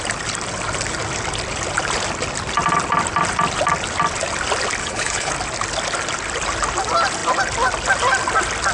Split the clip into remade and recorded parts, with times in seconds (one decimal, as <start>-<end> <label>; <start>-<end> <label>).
0.0-4.8 recorded; 4.8-5.3 remade; 5.3-8.7 recorded